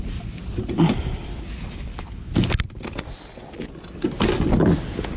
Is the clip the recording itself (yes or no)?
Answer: yes